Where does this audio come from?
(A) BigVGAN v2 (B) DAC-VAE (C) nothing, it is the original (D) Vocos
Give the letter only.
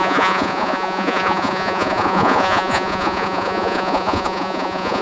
D